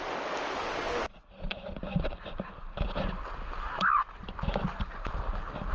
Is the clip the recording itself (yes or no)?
yes